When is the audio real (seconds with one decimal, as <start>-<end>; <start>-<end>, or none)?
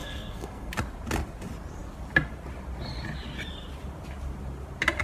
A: 0.7-5.0